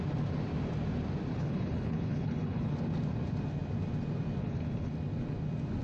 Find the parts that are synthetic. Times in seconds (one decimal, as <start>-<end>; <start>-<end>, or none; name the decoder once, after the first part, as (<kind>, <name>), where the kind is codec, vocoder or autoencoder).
1.3-2.7 (codec, HILCodec); 4.4-4.9